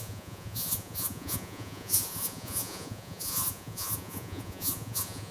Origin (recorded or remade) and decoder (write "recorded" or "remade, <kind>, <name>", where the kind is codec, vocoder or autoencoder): remade, vocoder, Vocos